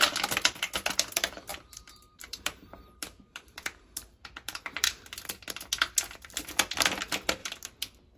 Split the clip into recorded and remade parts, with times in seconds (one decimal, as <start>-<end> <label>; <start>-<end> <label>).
0.0-1.5 recorded; 1.5-5.0 remade; 5.0-8.2 recorded